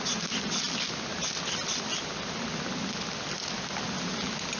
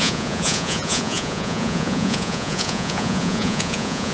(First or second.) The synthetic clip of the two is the second